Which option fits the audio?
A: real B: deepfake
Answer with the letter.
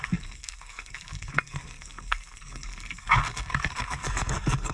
B